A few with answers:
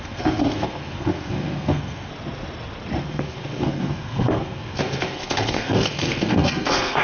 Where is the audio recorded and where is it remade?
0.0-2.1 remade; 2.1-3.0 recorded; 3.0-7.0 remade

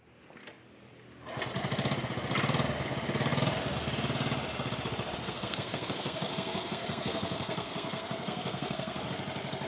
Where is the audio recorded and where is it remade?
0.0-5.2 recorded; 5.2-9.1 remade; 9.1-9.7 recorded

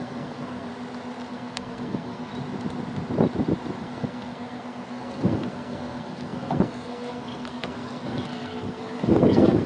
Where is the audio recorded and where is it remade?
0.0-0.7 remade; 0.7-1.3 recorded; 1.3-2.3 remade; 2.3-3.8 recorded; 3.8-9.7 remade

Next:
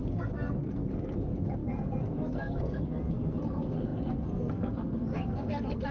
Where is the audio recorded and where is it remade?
0.0-5.9 remade